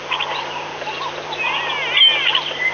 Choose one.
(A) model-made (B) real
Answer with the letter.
B